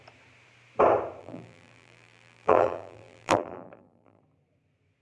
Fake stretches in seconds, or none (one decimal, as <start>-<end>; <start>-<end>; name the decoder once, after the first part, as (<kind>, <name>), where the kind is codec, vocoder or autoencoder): 1.2-4.2 (vocoder, BigVGAN v2)